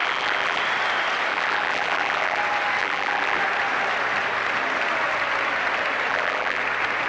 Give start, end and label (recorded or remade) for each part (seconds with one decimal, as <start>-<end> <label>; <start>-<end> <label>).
0.0-0.6 remade; 0.6-1.3 recorded; 1.3-2.4 remade; 2.4-2.8 recorded; 2.8-3.4 remade; 3.4-6.1 recorded; 6.1-6.6 remade; 6.6-7.1 recorded